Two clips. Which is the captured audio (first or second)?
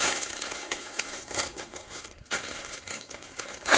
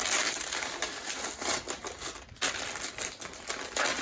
second